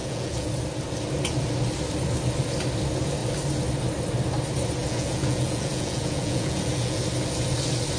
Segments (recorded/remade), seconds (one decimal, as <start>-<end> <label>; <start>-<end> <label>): 0.0-0.5 remade; 0.5-4.8 recorded; 4.8-7.0 remade; 7.0-8.0 recorded